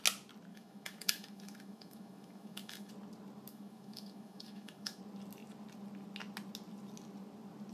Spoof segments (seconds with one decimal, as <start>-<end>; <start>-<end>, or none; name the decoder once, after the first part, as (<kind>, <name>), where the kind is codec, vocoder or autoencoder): 0.5-2.9 (autoencoder, DAC-VAE); 3.5-5.0